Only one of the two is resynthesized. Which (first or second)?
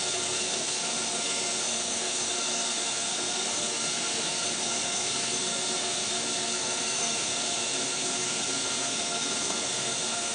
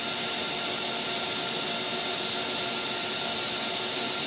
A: first